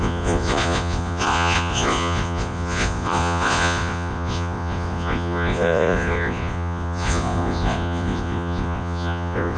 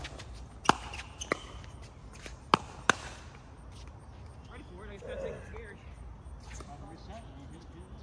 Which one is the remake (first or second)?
first